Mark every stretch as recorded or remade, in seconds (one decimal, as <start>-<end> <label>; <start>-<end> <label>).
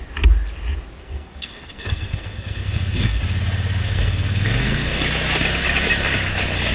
0.0-1.0 recorded; 1.0-3.2 remade; 3.2-3.8 recorded; 3.8-5.0 remade; 5.0-6.7 recorded